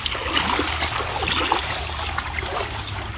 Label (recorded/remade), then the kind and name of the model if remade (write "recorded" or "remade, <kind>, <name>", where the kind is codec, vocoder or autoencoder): recorded